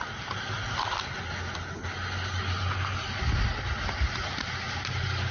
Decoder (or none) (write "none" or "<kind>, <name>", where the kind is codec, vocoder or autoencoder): none